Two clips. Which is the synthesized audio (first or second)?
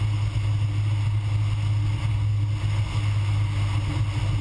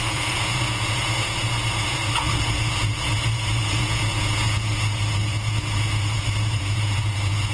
second